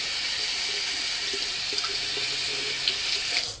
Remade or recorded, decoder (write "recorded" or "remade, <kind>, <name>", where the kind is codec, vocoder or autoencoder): recorded